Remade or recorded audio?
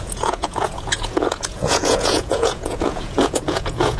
remade